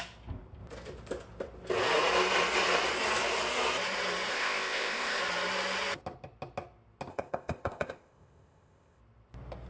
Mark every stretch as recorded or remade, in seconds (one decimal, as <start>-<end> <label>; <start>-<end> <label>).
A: 0.0-4.3 recorded; 4.3-5.2 remade; 5.2-7.1 recorded; 7.1-9.0 remade; 9.0-9.7 recorded